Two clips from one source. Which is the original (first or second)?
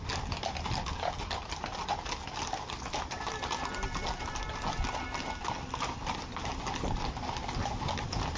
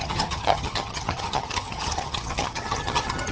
first